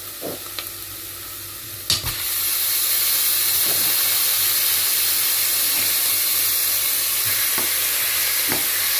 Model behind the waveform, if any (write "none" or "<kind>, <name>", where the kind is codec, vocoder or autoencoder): none